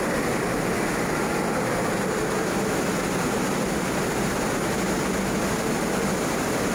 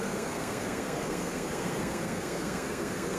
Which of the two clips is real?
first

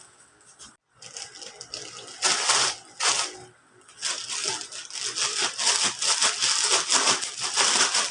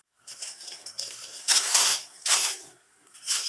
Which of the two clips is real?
first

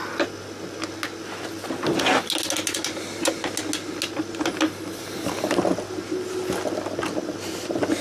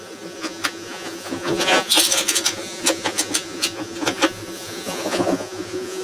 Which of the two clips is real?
first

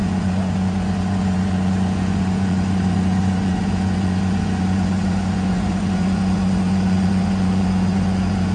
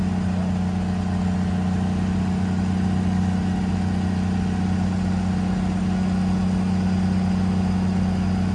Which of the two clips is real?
second